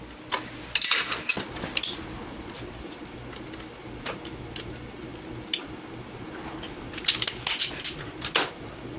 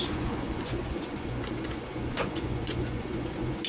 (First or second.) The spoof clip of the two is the second